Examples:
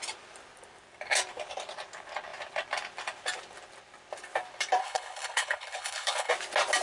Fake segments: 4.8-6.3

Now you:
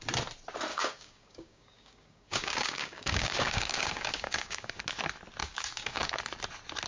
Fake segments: 0.7-4.8; 5.4-6.1